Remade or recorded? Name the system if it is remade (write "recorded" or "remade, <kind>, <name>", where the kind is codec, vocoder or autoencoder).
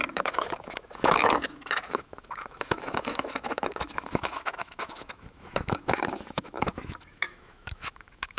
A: remade, autoencoder, DAC-VAE